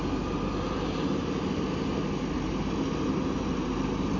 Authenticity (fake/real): real